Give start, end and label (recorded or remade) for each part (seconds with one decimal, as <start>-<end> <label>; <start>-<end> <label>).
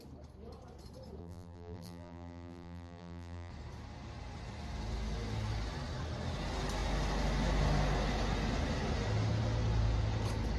0.0-1.2 recorded; 1.2-3.5 remade; 3.5-10.6 recorded